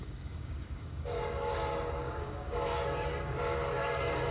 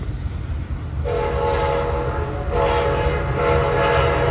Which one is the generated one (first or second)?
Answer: first